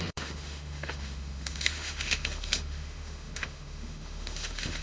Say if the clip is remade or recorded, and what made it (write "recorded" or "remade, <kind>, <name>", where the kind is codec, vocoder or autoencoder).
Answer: remade, autoencoder, DAC-VAE